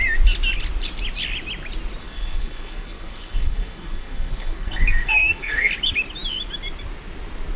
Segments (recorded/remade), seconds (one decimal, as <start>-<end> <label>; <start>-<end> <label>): 0.0-2.0 recorded; 2.0-5.7 remade; 5.7-7.6 recorded

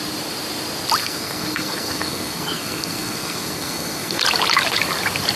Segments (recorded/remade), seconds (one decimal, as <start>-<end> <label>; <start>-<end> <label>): 0.0-1.0 recorded; 1.0-4.2 remade; 4.2-5.4 recorded

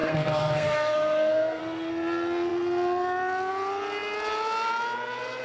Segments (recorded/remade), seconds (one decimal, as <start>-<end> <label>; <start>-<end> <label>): 0.0-1.6 remade; 1.6-5.4 recorded

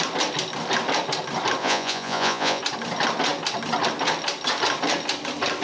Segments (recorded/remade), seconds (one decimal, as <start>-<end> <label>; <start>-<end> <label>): 0.0-1.6 recorded; 1.6-2.6 remade; 2.6-5.6 recorded

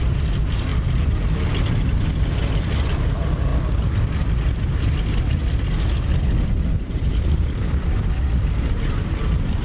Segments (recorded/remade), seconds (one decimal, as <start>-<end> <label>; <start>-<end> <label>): 0.0-9.6 recorded

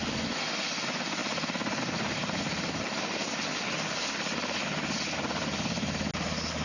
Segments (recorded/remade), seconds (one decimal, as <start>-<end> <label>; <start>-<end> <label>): 0.0-6.6 recorded

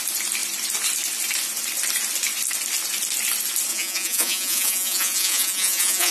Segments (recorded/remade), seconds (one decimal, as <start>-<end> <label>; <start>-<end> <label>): 0.0-3.7 recorded; 3.7-6.1 remade